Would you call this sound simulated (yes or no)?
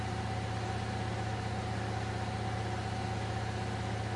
no